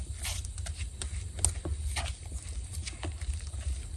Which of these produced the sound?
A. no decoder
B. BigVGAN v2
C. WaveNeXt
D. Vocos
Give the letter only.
A